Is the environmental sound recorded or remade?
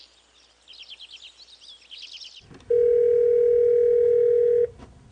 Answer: recorded